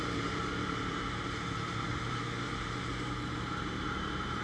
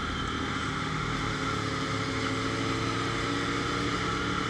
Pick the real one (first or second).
second